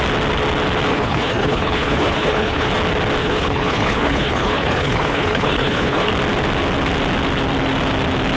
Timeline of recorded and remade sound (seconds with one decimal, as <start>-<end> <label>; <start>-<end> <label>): 0.0-0.9 recorded; 0.9-2.7 remade; 2.7-3.2 recorded; 3.2-6.1 remade; 6.1-8.4 recorded

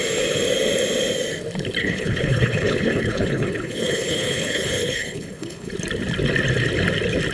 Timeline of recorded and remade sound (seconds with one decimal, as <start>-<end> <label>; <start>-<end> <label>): 0.0-1.8 recorded; 1.8-5.7 remade; 5.7-7.3 recorded

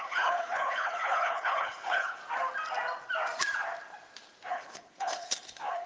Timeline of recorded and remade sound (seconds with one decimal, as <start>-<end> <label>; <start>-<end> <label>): 0.0-2.2 remade; 2.2-4.5 recorded; 4.5-5.9 remade